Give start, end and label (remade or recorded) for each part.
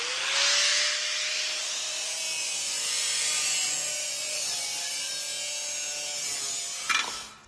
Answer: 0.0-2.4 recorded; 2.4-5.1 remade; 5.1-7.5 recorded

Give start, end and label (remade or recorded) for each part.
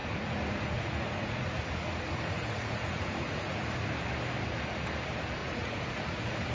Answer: 0.0-3.9 remade; 3.9-5.4 recorded; 5.4-6.5 remade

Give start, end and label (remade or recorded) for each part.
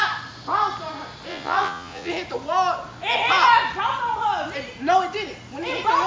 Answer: 0.0-1.3 recorded; 1.3-2.1 remade; 2.1-6.1 recorded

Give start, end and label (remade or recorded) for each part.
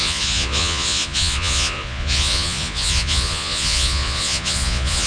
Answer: 0.0-5.1 remade